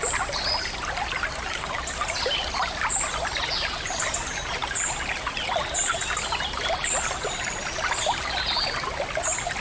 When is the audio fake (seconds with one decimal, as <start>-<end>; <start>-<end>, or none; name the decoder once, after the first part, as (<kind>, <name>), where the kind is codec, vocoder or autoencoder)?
none